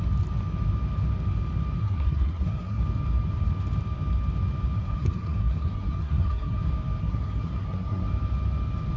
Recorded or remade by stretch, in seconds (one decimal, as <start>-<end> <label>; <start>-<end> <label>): 0.0-1.8 recorded; 1.8-2.8 remade; 2.8-4.8 recorded; 4.8-6.6 remade; 6.6-7.0 recorded; 7.0-8.1 remade; 8.1-9.0 recorded